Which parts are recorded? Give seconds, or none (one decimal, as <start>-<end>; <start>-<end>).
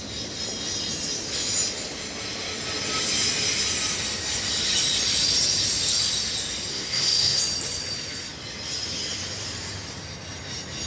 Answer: 0.0-6.7; 7.4-10.9